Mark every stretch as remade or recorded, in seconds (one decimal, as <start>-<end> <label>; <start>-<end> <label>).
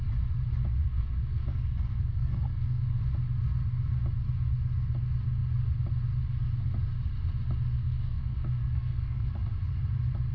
0.0-0.8 recorded; 0.8-3.0 remade; 3.0-7.8 recorded; 7.8-9.3 remade; 9.3-10.3 recorded